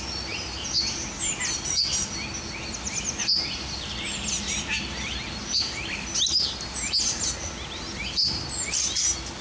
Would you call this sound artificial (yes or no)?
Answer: no